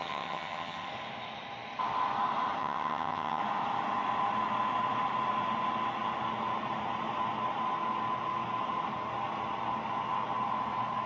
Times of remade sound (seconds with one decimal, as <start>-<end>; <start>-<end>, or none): 0.0-0.9; 2.6-3.4